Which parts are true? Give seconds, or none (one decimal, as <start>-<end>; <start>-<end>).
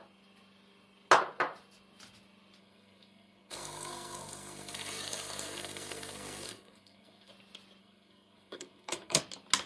0.0-2.6; 7.3-7.8; 9.2-9.7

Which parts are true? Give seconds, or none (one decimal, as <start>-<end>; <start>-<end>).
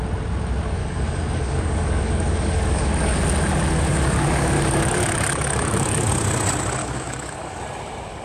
0.0-0.8; 3.2-3.9; 6.1-6.8; 7.6-8.2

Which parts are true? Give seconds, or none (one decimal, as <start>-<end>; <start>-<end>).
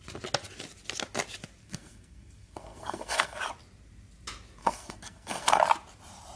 0.0-1.6; 3.4-4.6; 5.6-6.4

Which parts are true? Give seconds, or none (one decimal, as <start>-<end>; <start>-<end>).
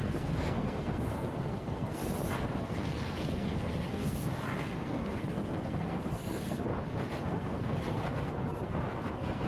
2.0-2.6; 6.7-7.2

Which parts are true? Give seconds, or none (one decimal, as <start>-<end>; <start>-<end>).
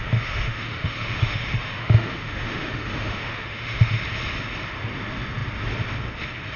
4.0-6.6